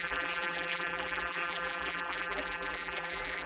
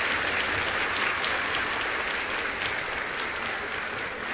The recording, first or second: second